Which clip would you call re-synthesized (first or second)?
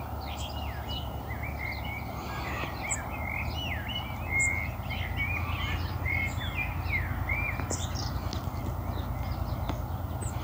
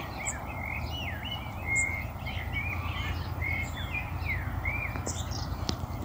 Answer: second